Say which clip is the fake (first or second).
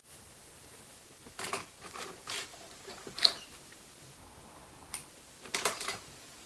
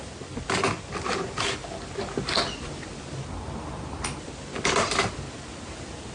first